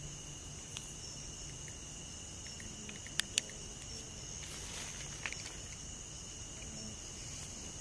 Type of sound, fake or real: real